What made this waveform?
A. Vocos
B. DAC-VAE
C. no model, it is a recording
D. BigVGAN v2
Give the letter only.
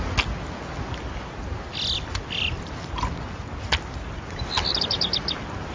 C